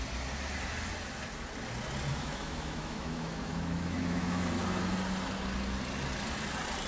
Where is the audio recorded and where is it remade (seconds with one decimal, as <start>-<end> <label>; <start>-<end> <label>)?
0.0-2.1 recorded; 2.1-4.5 remade; 4.5-6.9 recorded